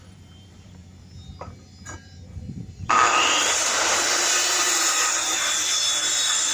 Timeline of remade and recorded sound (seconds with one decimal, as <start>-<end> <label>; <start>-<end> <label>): 0.0-0.9 remade; 0.9-2.5 recorded; 2.5-6.5 remade

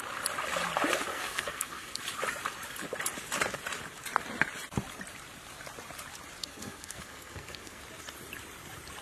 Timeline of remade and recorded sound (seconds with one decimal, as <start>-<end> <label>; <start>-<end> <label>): 0.0-1.1 recorded; 1.1-2.0 remade; 2.0-6.4 recorded; 6.4-7.8 remade; 7.8-9.0 recorded

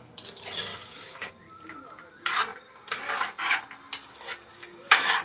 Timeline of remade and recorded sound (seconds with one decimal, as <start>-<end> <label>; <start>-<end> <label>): 0.0-0.7 recorded; 0.7-1.3 remade; 1.3-4.5 recorded; 4.5-5.2 remade

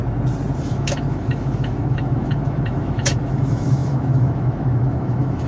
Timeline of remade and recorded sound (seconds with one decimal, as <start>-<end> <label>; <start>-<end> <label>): 0.0-0.6 recorded; 0.6-5.5 remade

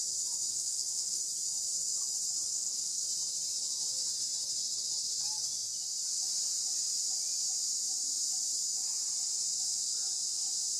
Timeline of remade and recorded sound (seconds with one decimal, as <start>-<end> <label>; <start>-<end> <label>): 0.0-0.5 recorded; 0.5-1.2 remade; 1.2-2.5 recorded; 2.5-3.0 remade; 3.0-10.8 recorded

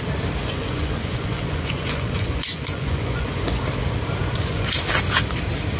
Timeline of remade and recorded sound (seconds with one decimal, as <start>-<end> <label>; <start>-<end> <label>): 0.0-0.4 recorded; 0.4-3.6 remade; 3.6-4.2 recorded; 4.2-4.7 remade; 4.7-5.8 recorded

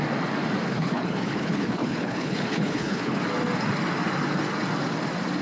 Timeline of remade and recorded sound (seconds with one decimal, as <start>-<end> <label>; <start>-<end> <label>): 0.0-0.7 recorded; 0.7-3.2 remade; 3.2-5.4 recorded

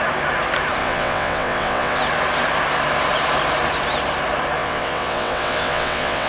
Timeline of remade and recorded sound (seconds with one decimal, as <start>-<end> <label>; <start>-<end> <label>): 0.0-0.8 recorded; 0.8-2.0 remade; 2.0-4.6 recorded; 4.6-6.3 remade